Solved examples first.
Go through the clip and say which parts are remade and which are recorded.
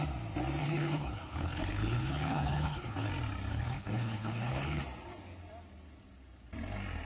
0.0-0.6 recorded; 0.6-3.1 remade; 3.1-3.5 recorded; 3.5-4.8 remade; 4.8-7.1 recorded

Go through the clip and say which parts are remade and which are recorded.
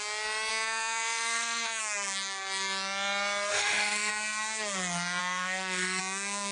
0.0-0.5 recorded; 0.5-1.8 remade; 1.8-3.5 recorded; 3.5-4.1 remade; 4.1-5.2 recorded; 5.2-6.0 remade; 6.0-6.5 recorded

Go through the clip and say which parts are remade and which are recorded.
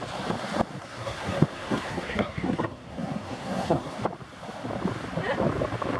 0.0-0.8 recorded; 0.8-4.0 remade; 4.0-6.0 recorded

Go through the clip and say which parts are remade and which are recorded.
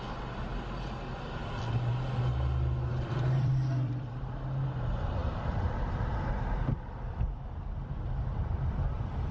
0.0-1.4 recorded; 1.4-1.9 remade; 1.9-2.9 recorded; 2.9-4.3 remade; 4.3-5.2 recorded; 5.2-9.3 remade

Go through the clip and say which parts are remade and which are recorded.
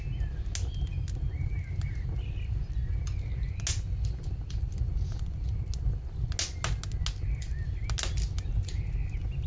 0.0-9.5 recorded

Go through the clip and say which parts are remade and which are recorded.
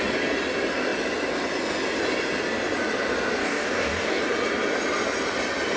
0.0-3.4 recorded; 3.4-4.2 remade; 4.2-5.8 recorded